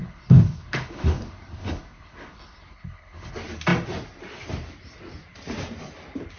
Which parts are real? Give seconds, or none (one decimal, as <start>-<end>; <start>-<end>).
3.3-6.4